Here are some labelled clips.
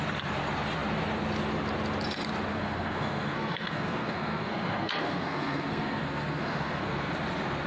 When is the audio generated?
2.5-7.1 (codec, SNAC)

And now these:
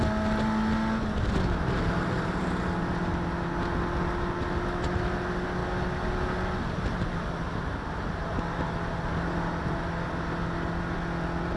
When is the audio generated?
none

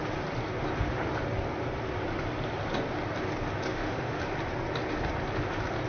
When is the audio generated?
3.7-4.2 (autoencoder, DAC-VAE)

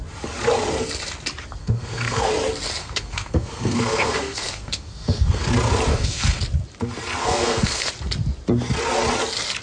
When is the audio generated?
1.6-2.3 (codec, SNAC); 2.8-5.5; 5.9-6.4; 7.2-7.9